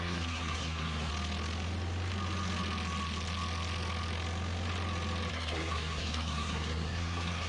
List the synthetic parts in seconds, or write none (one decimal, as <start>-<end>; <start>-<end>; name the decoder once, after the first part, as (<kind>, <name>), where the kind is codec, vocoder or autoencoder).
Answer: 0.0-1.1 (codec, SNAC); 5.3-7.5